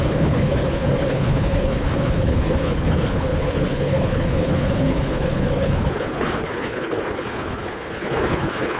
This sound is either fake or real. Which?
fake